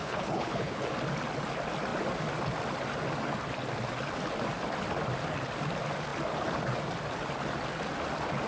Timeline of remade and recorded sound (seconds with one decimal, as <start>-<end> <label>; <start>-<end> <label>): 0.0-0.8 remade; 0.8-8.5 recorded